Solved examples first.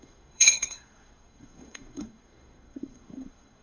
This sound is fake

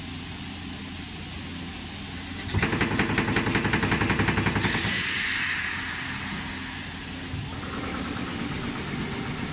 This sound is real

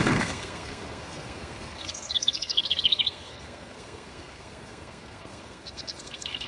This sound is fake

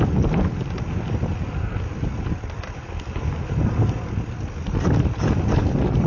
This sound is real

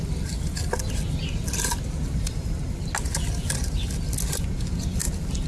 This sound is real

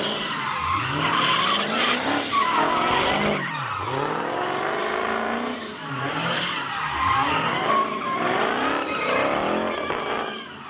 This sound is real